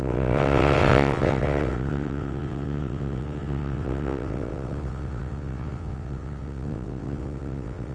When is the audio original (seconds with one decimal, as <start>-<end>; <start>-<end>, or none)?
none